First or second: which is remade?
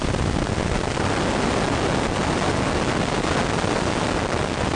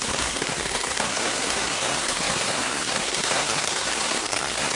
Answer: second